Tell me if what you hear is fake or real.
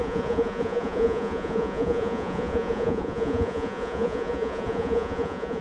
fake